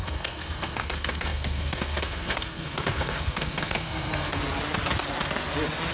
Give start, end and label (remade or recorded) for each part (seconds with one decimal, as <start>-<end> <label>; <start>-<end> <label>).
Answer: 0.0-4.4 remade; 4.4-5.9 recorded